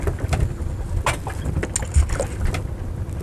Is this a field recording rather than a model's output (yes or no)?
yes